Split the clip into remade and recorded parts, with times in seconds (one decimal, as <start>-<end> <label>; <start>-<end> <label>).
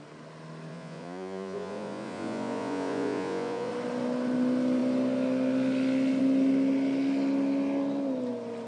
0.0-0.7 recorded; 0.7-3.7 remade; 3.7-8.7 recorded